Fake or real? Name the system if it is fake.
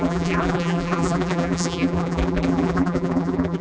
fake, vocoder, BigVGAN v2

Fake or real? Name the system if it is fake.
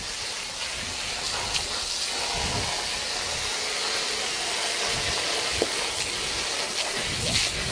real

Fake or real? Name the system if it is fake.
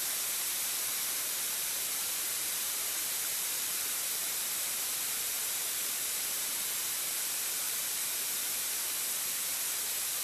fake, vocoder, BigVGAN v2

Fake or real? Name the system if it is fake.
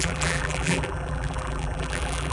fake, vocoder, BigVGAN v2